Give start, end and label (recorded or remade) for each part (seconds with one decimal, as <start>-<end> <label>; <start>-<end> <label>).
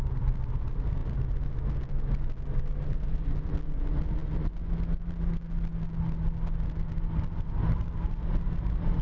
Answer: 0.0-1.0 remade; 1.0-2.6 recorded; 2.6-4.2 remade; 4.2-7.6 recorded; 7.6-9.0 remade